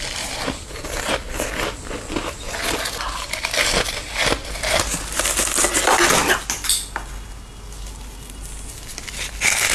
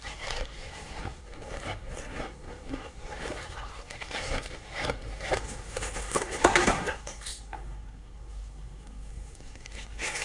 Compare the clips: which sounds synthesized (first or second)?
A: second